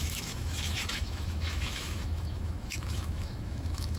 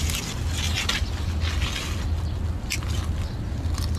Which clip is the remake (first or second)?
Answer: first